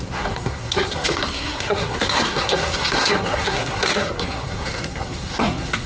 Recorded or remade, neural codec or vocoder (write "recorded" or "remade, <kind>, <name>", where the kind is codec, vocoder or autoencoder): remade, codec, SNAC